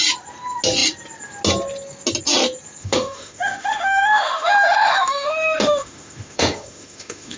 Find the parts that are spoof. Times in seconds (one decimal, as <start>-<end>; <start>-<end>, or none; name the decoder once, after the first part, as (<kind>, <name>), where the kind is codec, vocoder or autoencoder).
2.8-7.4 (autoencoder, DAC-VAE)